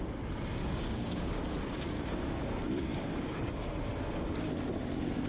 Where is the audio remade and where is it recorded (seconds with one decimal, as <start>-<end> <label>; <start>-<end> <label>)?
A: 0.0-0.6 recorded; 0.6-3.5 remade; 3.5-5.3 recorded